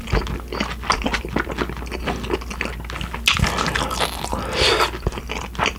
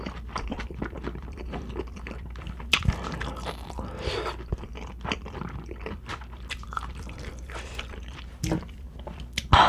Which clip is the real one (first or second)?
first